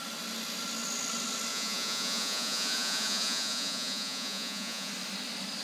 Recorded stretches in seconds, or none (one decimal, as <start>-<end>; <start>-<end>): 0.0-1.5; 4.9-5.6